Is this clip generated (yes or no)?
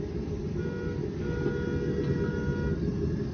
no